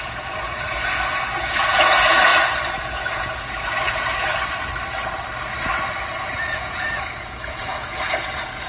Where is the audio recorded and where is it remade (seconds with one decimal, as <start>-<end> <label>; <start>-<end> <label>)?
0.0-2.3 remade; 2.3-2.8 recorded; 2.8-4.3 remade; 4.3-6.4 recorded; 6.4-8.7 remade